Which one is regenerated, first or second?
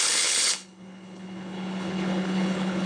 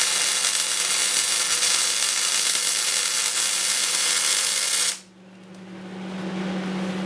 first